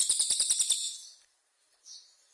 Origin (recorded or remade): recorded